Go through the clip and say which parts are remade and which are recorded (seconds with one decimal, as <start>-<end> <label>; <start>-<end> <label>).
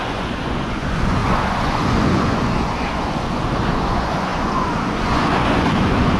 0.0-6.2 remade